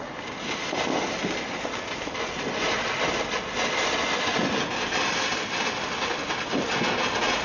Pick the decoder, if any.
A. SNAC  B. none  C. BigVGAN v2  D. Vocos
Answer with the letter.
B